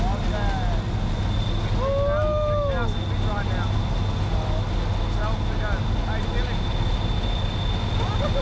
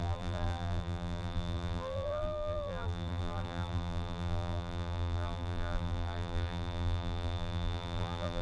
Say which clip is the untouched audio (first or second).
first